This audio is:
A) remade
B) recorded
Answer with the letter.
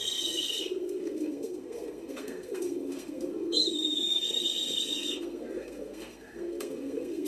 A